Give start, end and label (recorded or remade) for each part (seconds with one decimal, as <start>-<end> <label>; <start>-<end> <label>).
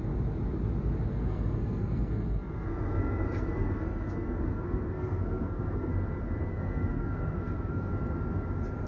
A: 0.0-1.1 recorded; 1.1-5.9 remade; 5.9-6.5 recorded; 6.5-7.9 remade; 7.9-8.9 recorded